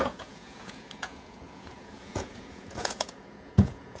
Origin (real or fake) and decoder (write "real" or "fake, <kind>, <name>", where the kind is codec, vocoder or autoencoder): fake, vocoder, Vocos